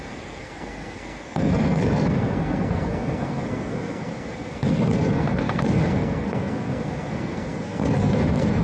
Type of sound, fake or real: fake